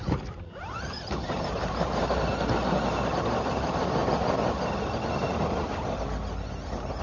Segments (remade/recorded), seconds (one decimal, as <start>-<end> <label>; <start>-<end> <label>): 0.0-2.3 remade; 2.3-3.5 recorded; 3.5-4.0 remade; 4.0-7.0 recorded